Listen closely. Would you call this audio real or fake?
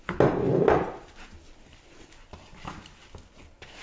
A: real